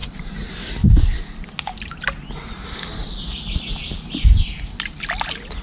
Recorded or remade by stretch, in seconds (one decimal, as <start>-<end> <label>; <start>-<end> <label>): 0.0-5.6 recorded